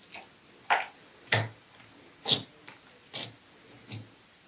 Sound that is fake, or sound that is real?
real